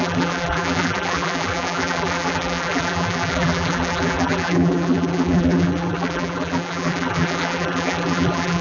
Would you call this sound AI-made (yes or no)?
yes